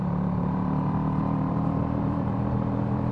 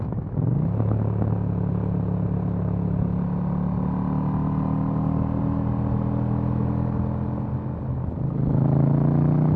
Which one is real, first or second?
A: second